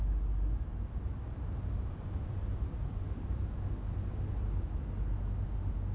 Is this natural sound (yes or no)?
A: yes